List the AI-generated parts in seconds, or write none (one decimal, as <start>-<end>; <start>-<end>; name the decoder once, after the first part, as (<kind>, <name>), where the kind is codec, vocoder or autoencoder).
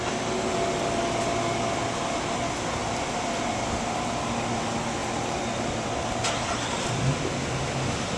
none